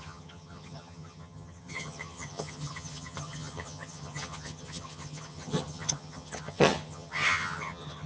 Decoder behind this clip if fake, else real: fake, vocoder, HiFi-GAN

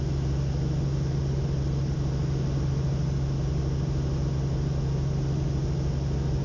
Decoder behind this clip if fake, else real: real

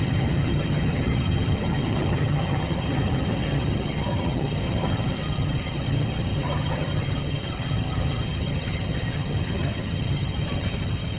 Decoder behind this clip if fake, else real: fake, vocoder, HiFi-GAN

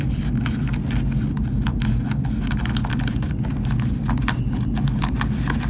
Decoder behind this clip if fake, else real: real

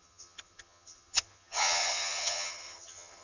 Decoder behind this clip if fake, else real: fake, vocoder, HiFi-GAN